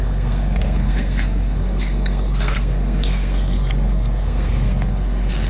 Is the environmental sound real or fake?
fake